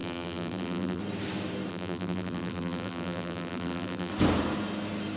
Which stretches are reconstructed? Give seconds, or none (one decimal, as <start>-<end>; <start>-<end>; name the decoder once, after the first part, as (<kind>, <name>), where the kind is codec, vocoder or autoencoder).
0.0-1.0 (vocoder, BigVGAN v2); 1.7-4.1